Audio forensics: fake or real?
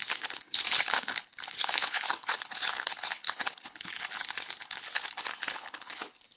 fake